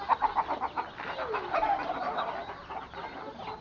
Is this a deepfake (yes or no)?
no